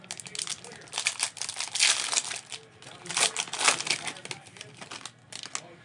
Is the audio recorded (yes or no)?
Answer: yes